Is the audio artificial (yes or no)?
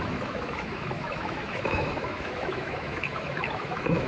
yes